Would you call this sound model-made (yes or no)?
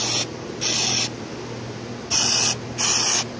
no